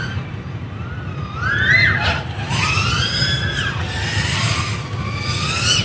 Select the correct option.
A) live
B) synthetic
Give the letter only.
A